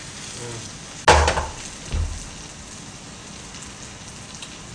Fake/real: real